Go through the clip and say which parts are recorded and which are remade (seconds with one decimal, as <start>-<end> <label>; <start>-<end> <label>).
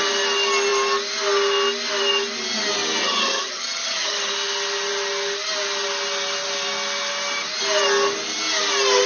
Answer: 0.0-3.0 recorded; 3.0-4.3 remade; 4.3-9.1 recorded